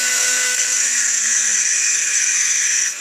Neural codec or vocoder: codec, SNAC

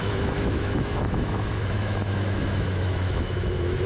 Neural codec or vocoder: autoencoder, DAC-VAE